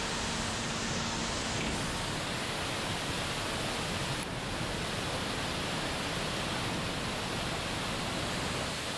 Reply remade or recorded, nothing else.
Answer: recorded